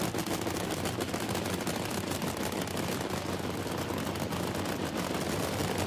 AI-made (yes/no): no